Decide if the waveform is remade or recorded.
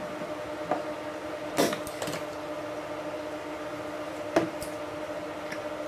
recorded